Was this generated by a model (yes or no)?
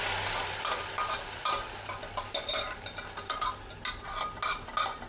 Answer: no